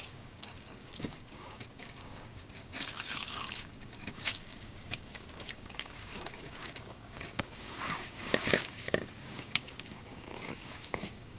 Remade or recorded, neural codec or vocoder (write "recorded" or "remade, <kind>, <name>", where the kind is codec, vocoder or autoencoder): remade, codec, DAC